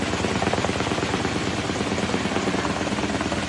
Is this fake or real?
real